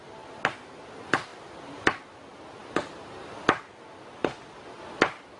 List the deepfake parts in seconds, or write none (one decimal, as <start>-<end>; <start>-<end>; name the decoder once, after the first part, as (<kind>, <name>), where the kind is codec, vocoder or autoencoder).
1.3-2.0 (vocoder, BigVGAN v2)